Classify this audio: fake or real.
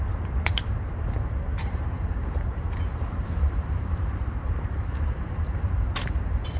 fake